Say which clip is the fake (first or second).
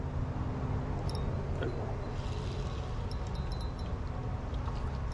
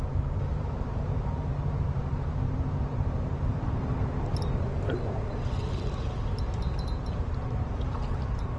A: second